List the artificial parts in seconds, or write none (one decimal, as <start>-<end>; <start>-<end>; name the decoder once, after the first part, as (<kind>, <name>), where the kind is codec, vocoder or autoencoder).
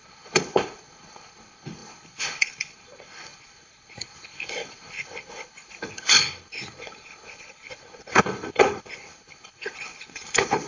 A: 0.0-10.7 (codec, HILCodec)